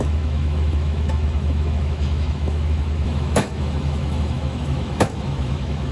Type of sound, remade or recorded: remade